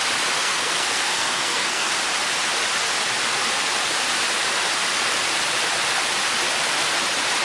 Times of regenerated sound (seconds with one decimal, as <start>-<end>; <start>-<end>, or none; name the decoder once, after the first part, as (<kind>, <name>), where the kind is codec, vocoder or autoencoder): 0.4-1.9 (codec, SNAC)

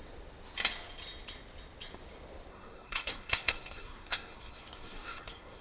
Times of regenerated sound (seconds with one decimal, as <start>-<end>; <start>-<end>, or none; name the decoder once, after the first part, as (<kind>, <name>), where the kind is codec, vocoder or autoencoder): 2.5-5.6 (codec, SNAC)

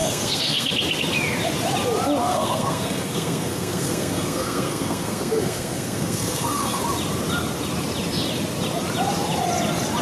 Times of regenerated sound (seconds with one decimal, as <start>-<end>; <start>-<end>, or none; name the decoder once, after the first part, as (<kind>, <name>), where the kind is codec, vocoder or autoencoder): 0.0-0.7 (codec, SNAC); 2.2-6.8